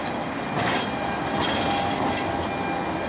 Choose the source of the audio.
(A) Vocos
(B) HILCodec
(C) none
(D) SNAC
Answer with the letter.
C